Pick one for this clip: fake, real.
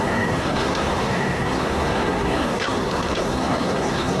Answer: fake